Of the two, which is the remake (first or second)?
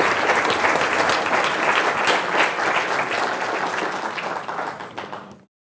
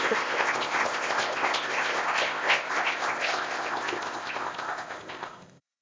second